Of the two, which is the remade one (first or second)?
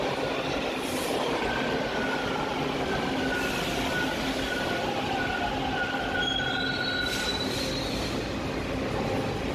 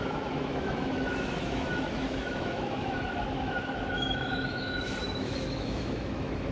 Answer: second